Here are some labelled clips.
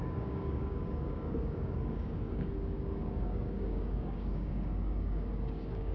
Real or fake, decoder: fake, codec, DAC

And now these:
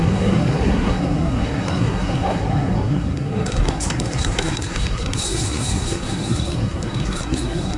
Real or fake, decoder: fake, codec, SNAC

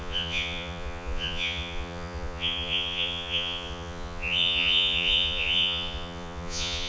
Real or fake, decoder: fake, vocoder, Vocos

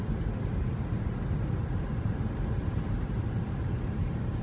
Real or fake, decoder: fake, vocoder, BigVGAN v2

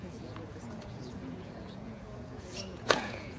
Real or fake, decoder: fake, vocoder, Vocos